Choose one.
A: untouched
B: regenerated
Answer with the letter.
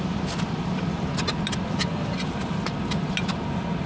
A